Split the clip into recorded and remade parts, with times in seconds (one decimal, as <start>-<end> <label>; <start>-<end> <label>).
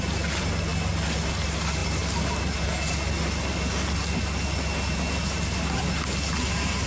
0.0-6.9 recorded